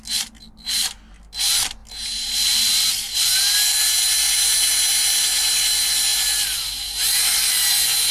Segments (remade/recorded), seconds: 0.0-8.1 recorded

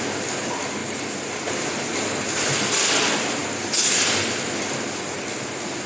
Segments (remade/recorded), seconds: 0.0-5.9 recorded

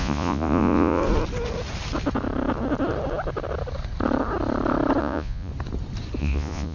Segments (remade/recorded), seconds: 0.0-1.0 remade; 1.0-5.0 recorded; 5.0-5.5 remade; 5.5-6.2 recorded; 6.2-6.7 remade

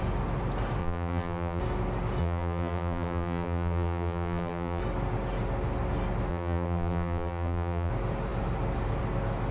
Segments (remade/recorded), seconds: 0.0-0.8 recorded; 0.8-1.6 remade; 1.6-2.2 recorded; 2.2-4.8 remade; 4.8-6.3 recorded; 6.3-7.9 remade; 7.9-9.5 recorded

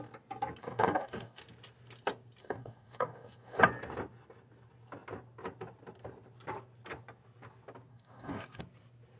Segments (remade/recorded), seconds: 0.0-0.6 recorded; 0.6-1.4 remade; 1.4-2.4 recorded; 2.4-3.6 remade; 3.6-7.9 recorded; 7.9-8.6 remade; 8.6-9.2 recorded